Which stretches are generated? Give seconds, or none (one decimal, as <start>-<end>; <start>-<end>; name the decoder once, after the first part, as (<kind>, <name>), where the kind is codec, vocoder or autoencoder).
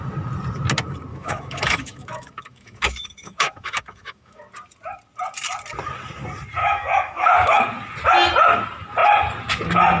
1.1-4.4 (autoencoder, DAC-VAE); 6.6-7.6